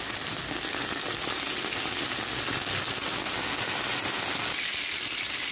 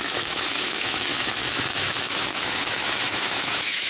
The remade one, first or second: second